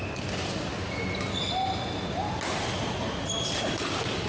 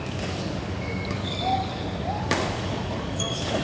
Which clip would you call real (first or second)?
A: first